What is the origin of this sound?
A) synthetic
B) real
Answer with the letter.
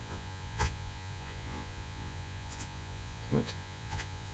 A